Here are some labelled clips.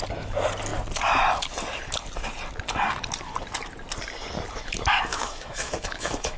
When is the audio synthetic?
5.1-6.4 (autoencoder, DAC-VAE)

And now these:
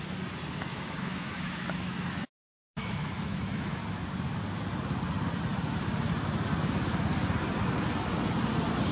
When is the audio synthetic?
0.7-3.8 (autoencoder, DAC-VAE)

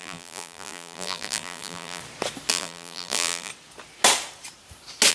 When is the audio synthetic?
0.0-2.0 (vocoder, BigVGAN v2); 2.5-3.5

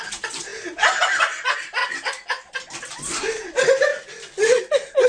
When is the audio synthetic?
0.0-1.8 (vocoder, BigVGAN v2); 2.9-3.9; 4.6-5.1

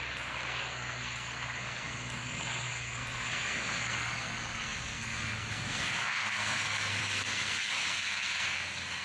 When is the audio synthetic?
0.0-9.0 (codec, SNAC)

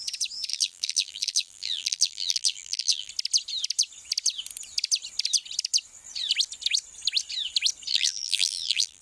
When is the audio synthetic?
0.5-3.1 (vocoder, BigVGAN v2); 7.9-9.0

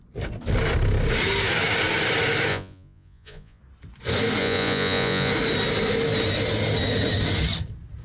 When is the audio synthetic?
2.5-3.6 (vocoder, Vocos); 4.4-5.3